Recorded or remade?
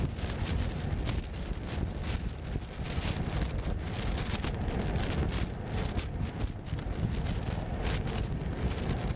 recorded